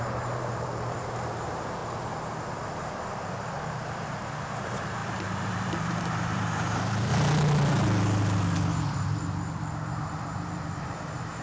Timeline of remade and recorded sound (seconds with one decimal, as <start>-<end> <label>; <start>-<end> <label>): 0.0-1.8 remade; 1.8-3.3 recorded; 3.3-7.1 remade; 7.1-9.9 recorded; 9.9-11.4 remade